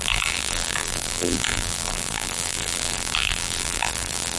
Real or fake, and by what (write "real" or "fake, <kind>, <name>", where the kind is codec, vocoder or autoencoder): fake, vocoder, BigVGAN v2